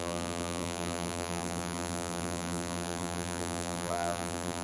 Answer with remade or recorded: remade